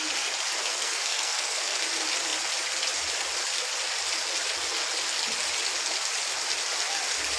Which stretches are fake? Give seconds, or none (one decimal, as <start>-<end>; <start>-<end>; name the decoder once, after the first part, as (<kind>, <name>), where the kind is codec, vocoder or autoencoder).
0.7-1.8 (codec, SNAC)